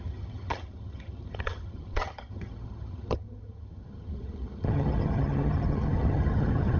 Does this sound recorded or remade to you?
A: remade